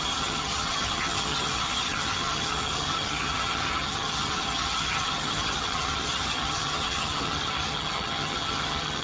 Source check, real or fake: fake